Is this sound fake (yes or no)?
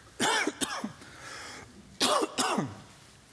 no